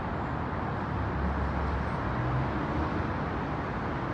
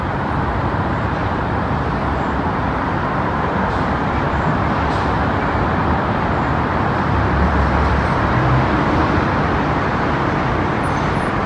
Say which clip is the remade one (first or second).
second